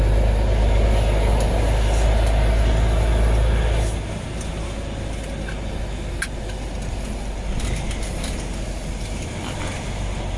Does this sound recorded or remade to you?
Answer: recorded